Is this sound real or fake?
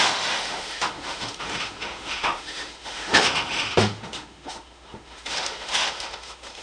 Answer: fake